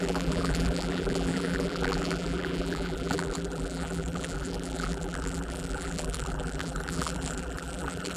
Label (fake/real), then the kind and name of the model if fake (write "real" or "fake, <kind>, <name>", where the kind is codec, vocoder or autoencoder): fake, vocoder, BigVGAN v2